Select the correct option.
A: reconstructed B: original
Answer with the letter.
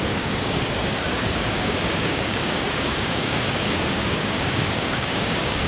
A